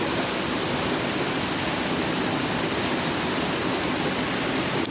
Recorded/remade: recorded